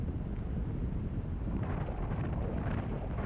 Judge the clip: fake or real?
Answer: real